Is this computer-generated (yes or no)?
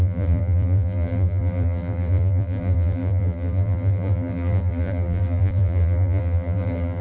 yes